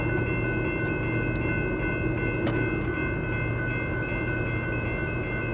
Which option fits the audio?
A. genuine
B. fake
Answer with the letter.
A